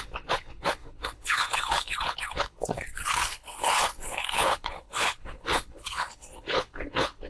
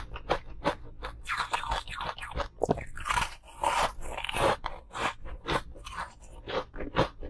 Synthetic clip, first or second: first